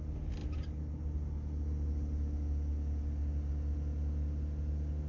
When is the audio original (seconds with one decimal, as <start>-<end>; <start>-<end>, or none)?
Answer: 0.0-5.1